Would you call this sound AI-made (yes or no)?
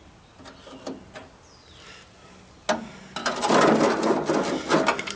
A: no